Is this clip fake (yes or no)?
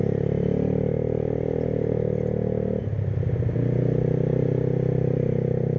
no